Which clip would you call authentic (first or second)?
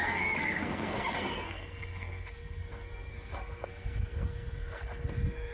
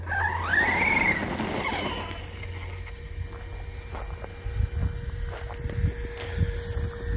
second